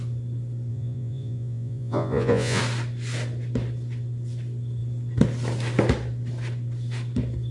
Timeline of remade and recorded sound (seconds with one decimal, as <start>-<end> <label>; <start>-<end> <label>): 0.0-0.7 recorded; 0.7-2.6 remade; 2.6-7.5 recorded